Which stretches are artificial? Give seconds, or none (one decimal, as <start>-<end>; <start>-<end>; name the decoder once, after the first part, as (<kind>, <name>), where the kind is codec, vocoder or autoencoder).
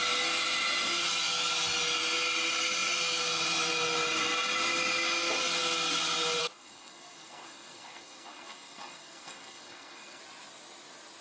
6.4-10.2 (codec, SNAC)